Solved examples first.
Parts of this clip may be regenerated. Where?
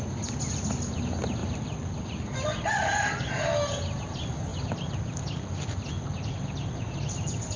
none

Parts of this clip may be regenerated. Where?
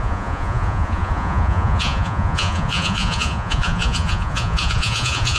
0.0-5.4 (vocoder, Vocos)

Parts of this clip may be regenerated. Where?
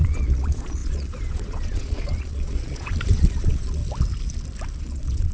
0.0-3.8 (vocoder, Vocos); 4.8-5.3